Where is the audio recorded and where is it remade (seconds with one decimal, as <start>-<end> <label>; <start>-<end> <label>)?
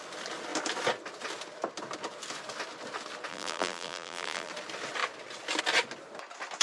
0.0-3.3 recorded; 3.3-4.5 remade; 4.5-6.6 recorded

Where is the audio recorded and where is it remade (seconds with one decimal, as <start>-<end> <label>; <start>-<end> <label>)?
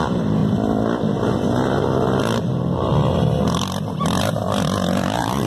0.0-0.4 remade; 0.4-2.4 recorded; 2.4-2.9 remade; 2.9-4.2 recorded; 4.2-5.5 remade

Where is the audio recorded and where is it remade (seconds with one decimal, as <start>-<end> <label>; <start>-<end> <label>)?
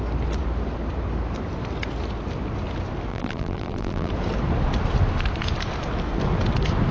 0.0-3.1 recorded; 3.1-4.1 remade; 4.1-6.9 recorded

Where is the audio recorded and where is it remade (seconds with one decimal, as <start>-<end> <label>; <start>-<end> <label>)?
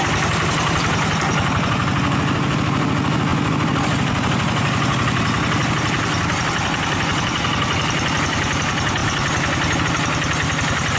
0.0-3.3 recorded; 3.3-5.7 remade; 5.7-11.0 recorded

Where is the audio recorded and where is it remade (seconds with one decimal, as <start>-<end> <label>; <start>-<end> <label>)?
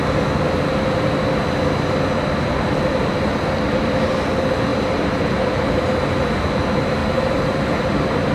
0.0-4.7 recorded; 4.7-6.2 remade; 6.2-7.0 recorded; 7.0-7.9 remade; 7.9-8.3 recorded